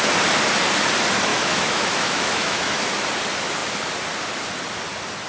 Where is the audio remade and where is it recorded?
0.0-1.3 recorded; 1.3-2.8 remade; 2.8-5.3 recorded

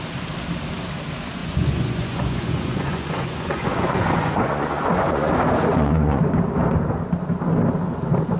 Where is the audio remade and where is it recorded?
0.0-1.4 recorded; 1.4-5.3 remade; 5.3-5.7 recorded; 5.7-6.2 remade; 6.2-8.4 recorded

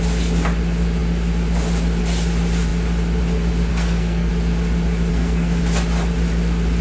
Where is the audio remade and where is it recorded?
0.0-3.7 recorded; 3.7-4.3 remade; 4.3-5.1 recorded; 5.1-5.6 remade; 5.6-6.8 recorded

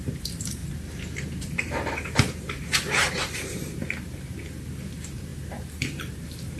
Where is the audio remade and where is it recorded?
0.0-0.6 remade; 0.6-1.4 recorded; 1.4-6.6 remade

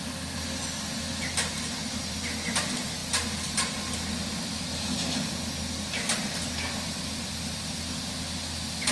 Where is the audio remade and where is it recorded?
0.0-8.9 recorded

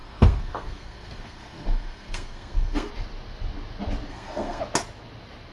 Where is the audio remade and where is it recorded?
0.0-2.9 remade; 2.9-4.1 recorded; 4.1-4.6 remade; 4.6-5.5 recorded

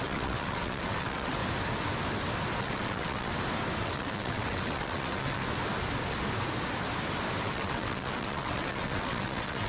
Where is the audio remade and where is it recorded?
0.0-1.4 remade; 1.4-2.6 recorded; 2.6-3.3 remade; 3.3-3.8 recorded; 3.8-5.4 remade; 5.4-7.4 recorded; 7.4-9.7 remade

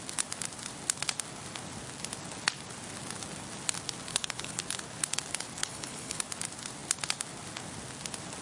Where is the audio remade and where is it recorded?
0.0-4.1 recorded; 4.1-4.6 remade; 4.6-5.6 recorded; 5.6-6.2 remade; 6.2-8.4 recorded